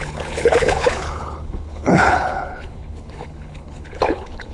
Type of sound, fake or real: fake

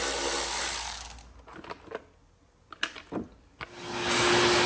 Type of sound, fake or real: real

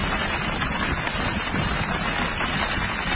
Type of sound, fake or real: real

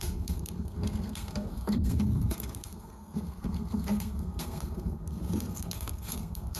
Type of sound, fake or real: fake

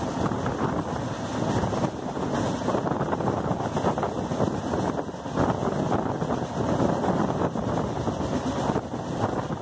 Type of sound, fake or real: real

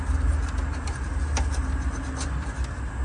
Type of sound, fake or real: real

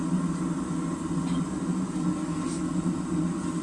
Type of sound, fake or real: real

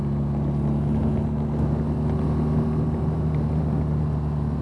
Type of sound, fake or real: real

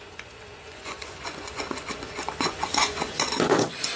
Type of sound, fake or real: fake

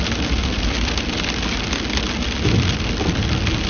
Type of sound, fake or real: real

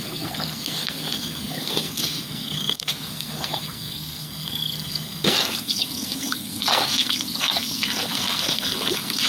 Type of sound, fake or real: fake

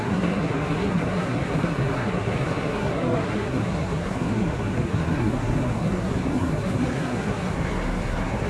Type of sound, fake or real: fake